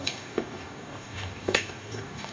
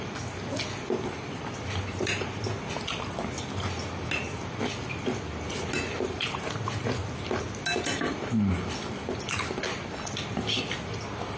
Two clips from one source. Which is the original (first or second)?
second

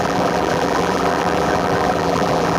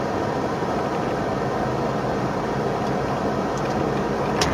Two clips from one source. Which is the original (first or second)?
second